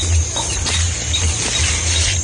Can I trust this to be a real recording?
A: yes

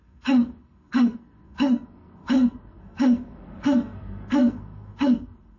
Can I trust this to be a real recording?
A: no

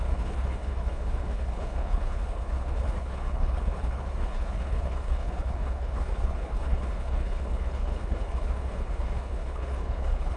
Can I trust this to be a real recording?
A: no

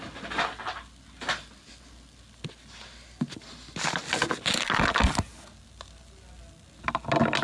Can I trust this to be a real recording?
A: yes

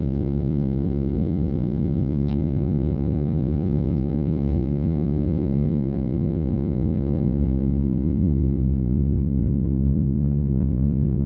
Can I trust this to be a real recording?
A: no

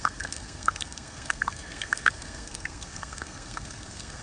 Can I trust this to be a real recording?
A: no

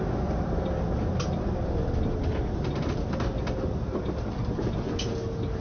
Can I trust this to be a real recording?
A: yes